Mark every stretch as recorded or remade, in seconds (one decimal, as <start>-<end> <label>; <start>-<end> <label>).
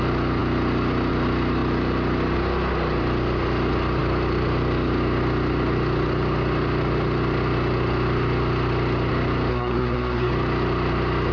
0.0-9.5 recorded; 9.5-10.3 remade; 10.3-11.3 recorded